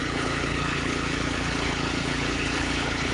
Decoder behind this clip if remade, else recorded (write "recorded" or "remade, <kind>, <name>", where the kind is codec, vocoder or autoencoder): remade, codec, HILCodec